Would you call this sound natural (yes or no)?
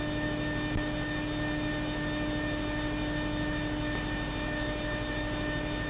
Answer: yes